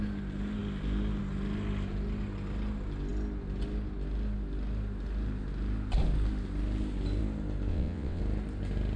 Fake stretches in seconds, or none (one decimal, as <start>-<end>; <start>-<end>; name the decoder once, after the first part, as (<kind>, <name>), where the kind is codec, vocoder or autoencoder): 7.7-8.2 (vocoder, WaveNeXt)